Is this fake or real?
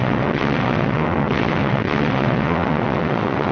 fake